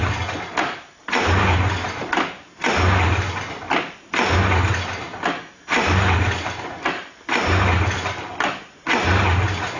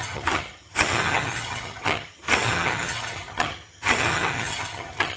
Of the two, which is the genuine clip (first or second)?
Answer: first